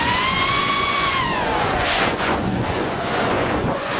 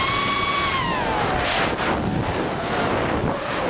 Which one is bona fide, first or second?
second